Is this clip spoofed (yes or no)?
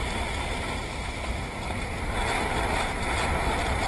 yes